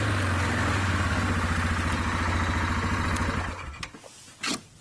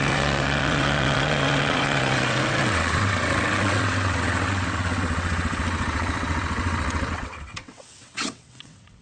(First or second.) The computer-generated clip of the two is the second